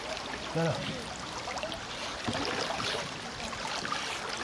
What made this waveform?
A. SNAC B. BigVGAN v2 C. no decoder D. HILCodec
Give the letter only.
C